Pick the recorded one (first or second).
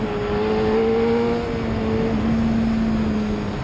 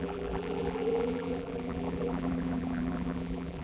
first